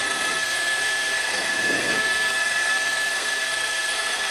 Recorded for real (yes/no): no